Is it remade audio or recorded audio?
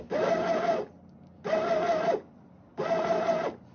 recorded